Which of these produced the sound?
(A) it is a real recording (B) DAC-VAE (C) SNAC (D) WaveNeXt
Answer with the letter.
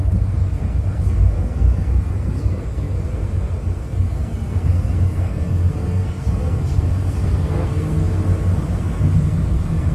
C